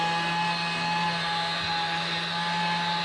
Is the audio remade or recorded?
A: recorded